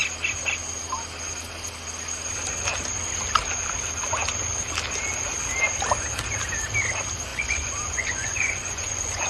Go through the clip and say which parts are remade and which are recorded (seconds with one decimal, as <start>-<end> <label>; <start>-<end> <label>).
0.0-7.3 recorded; 7.3-9.3 remade